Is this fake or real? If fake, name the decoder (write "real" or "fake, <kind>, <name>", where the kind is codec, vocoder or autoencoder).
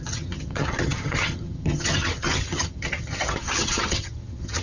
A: fake, vocoder, HiFi-GAN